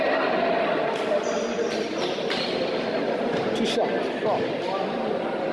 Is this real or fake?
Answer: real